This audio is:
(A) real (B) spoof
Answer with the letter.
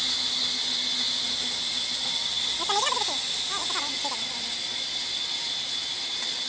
A